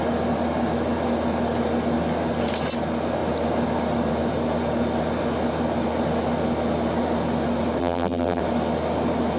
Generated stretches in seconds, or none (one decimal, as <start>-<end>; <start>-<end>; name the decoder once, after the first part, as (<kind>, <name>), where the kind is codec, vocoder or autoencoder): 7.8-8.4 (vocoder, BigVGAN v2)